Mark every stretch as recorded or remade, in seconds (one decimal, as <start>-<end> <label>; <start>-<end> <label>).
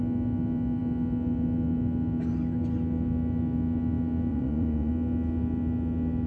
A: 0.0-4.3 recorded; 4.3-4.9 remade; 4.9-6.3 recorded